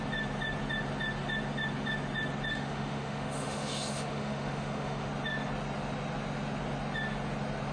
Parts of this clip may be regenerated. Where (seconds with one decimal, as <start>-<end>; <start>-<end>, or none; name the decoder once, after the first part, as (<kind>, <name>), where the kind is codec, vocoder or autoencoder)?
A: 2.5-5.1 (autoencoder, DAC-VAE)